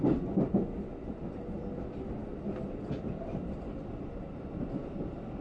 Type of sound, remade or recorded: recorded